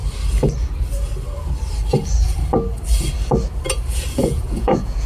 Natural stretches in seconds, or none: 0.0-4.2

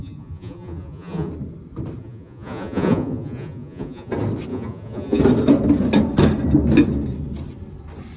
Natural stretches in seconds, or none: 1.3-2.0; 4.1-4.5; 5.2-8.2

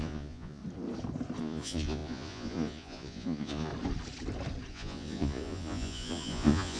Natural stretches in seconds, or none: 0.6-1.4; 3.7-4.7

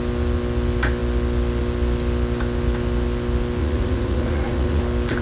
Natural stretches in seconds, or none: 0.0-3.6; 4.8-5.2